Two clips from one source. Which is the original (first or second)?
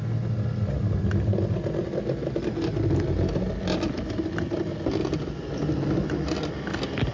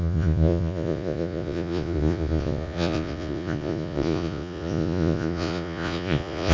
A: first